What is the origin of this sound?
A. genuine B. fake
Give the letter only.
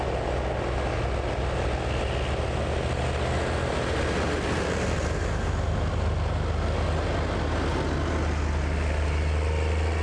A